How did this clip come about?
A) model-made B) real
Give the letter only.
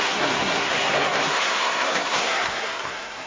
A